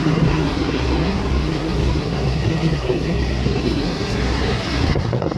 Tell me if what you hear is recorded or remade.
remade